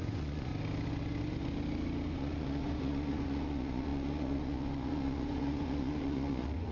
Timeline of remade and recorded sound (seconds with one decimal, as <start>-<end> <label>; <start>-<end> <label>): 0.0-0.5 remade; 0.5-2.1 recorded; 2.1-6.7 remade